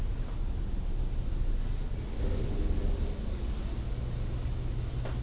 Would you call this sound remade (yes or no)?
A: no